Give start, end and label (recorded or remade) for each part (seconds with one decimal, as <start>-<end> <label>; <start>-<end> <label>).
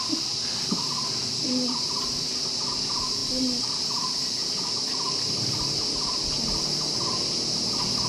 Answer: 0.0-8.1 recorded